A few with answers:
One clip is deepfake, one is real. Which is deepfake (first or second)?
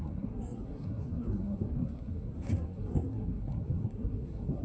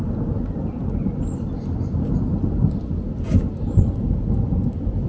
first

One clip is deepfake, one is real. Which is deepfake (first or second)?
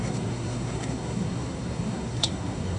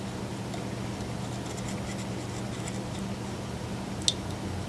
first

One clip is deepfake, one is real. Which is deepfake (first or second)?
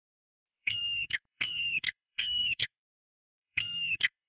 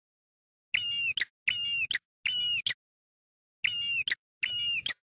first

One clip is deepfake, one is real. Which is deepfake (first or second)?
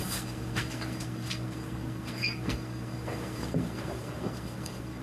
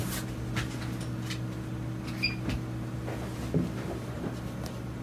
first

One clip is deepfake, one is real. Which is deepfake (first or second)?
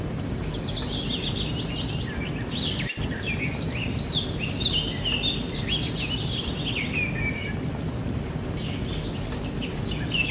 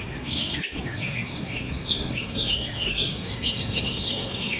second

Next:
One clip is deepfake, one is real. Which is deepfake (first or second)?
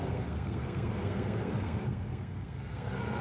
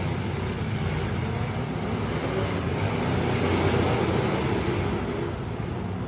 first